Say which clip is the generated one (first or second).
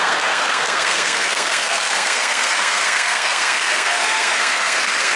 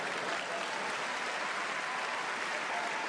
first